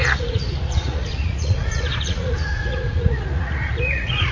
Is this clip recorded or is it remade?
remade